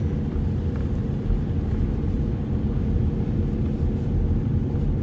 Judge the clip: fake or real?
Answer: real